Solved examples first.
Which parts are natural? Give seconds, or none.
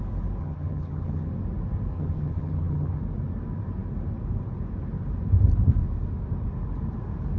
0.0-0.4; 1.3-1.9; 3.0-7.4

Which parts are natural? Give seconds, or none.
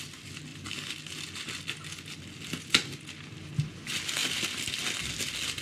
0.0-5.6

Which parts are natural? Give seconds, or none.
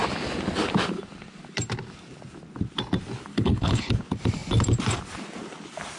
0.0-3.3; 3.9-6.0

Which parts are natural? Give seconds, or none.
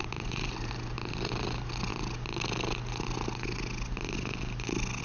1.3-5.0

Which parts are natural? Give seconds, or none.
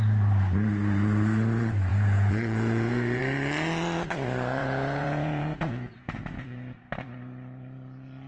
0.0-1.9; 3.2-4.6; 6.8-8.3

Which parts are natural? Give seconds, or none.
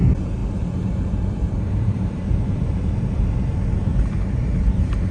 0.0-0.4; 3.5-3.9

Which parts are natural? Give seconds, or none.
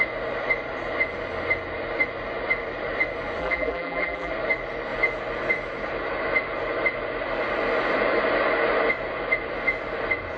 0.0-3.4; 4.3-10.4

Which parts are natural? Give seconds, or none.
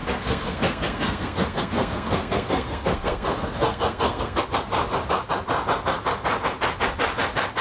4.4-7.6